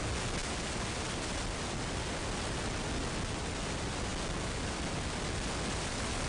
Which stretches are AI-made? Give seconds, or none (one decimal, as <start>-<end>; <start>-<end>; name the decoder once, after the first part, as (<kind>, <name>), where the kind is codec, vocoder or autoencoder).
none